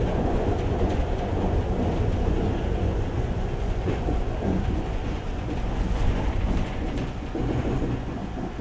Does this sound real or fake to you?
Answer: fake